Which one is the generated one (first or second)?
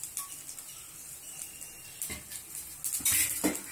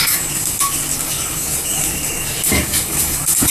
second